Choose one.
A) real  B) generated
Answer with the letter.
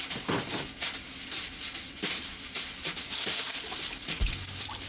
A